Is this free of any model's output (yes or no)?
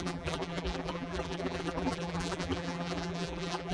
no